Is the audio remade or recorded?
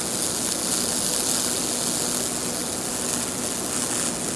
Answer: recorded